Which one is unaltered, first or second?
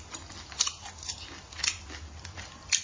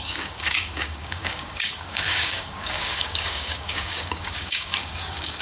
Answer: first